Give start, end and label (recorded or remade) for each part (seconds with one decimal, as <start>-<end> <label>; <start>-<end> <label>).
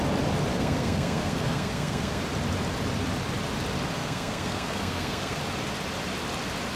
0.0-0.5 recorded; 0.5-2.2 remade; 2.2-4.0 recorded; 4.0-5.4 remade; 5.4-6.8 recorded